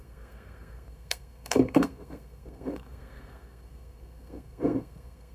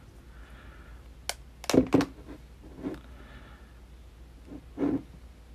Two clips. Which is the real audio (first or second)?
second